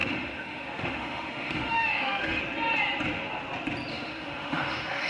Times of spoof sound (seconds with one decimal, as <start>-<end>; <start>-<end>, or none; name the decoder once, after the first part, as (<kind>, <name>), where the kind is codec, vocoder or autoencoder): 0.0-2.4 (autoencoder, DAC-VAE); 3.9-5.1